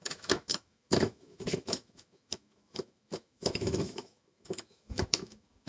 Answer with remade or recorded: remade